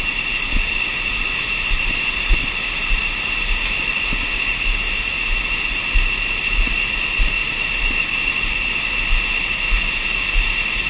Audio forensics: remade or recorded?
recorded